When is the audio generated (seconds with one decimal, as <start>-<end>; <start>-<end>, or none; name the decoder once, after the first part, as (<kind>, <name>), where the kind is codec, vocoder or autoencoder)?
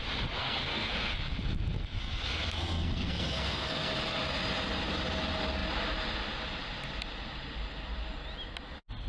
0.4-3.9 (codec, SNAC)